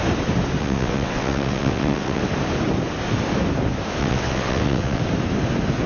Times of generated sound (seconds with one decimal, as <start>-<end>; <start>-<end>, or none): 0.6-2.2; 4.0-5.0